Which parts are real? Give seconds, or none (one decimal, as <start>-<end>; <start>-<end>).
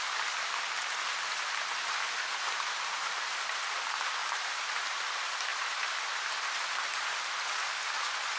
0.0-4.2; 5.1-5.5; 6.1-8.4